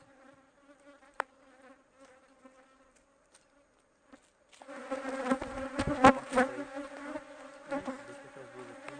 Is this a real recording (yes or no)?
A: yes